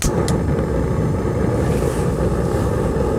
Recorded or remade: recorded